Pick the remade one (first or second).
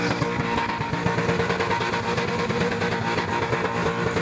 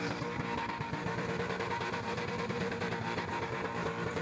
second